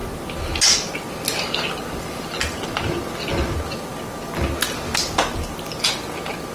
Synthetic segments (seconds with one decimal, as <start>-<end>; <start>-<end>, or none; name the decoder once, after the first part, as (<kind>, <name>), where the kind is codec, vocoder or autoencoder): none